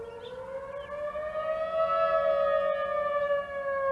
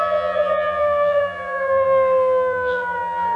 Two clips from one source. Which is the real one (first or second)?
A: first